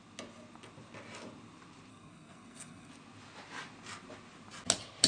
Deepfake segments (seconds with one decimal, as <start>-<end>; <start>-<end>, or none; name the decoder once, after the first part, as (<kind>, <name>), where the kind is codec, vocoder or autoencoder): 1.9-2.9 (codec, SNAC)